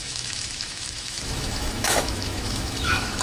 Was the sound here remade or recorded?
remade